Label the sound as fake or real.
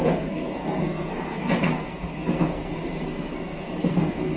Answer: fake